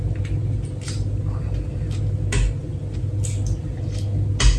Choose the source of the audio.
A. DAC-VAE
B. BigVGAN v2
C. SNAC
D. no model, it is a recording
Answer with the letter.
D